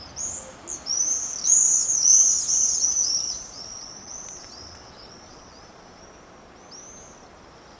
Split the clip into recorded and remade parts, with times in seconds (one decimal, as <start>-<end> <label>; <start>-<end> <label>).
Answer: 0.0-1.6 recorded; 1.6-5.8 remade; 5.8-7.8 recorded